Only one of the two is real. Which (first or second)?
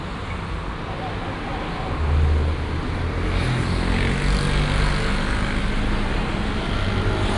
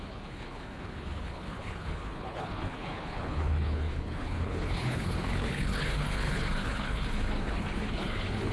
first